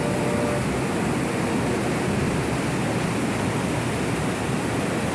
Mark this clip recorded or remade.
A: recorded